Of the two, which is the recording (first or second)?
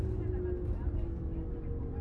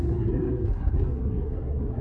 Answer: first